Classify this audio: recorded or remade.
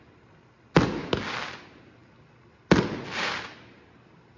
recorded